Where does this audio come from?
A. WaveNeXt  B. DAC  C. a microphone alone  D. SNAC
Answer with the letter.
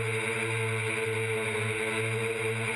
C